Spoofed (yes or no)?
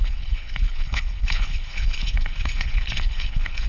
yes